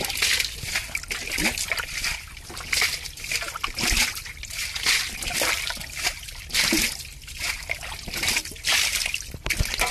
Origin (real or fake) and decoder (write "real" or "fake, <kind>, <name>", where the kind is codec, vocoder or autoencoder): real